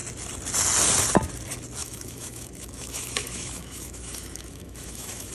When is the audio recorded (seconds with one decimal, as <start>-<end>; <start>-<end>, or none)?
0.0-1.8